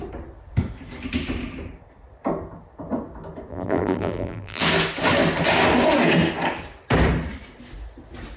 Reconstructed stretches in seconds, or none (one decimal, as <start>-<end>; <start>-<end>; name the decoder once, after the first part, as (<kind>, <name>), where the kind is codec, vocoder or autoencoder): 3.5-4.6 (vocoder, BigVGAN v2)